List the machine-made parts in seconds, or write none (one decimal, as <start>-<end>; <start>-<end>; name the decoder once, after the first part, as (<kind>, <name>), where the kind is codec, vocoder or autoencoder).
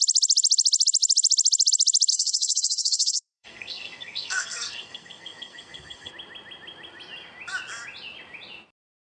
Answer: 2.1-6.1 (codec, SNAC)